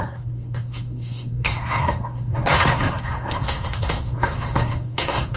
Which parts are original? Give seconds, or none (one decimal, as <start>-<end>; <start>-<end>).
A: none